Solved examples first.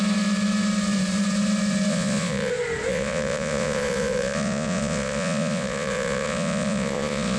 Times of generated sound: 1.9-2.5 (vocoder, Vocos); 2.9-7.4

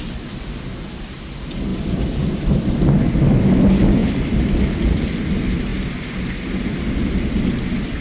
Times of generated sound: 1.7-2.5 (vocoder, BigVGAN v2); 4.0-4.7